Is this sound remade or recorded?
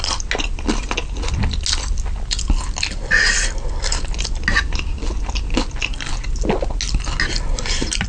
recorded